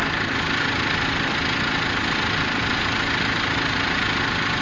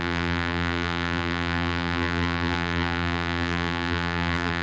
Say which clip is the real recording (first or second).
first